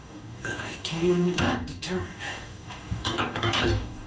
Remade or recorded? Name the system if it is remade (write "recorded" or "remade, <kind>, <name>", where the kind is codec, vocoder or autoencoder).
remade, codec, DAC